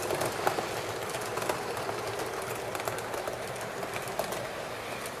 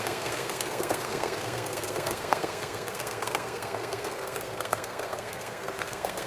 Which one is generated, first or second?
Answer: second